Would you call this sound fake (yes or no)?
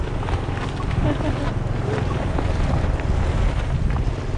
no